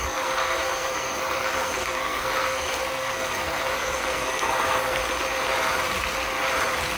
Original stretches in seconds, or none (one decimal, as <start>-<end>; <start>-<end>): 5.0-7.0

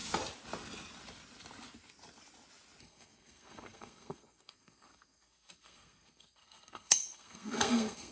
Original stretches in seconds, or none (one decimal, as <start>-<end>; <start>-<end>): 0.0-2.8

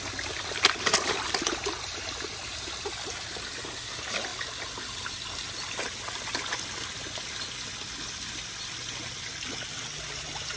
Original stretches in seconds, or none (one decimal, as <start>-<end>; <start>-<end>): 0.0-10.6

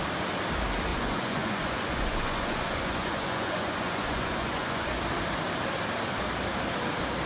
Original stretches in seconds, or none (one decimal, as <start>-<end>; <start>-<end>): 0.0-0.9; 5.0-7.3